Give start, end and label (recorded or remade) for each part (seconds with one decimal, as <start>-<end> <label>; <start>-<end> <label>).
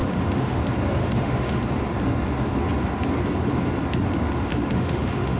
0.0-0.6 remade; 0.6-1.0 recorded; 1.0-1.6 remade; 1.6-4.5 recorded; 4.5-5.4 remade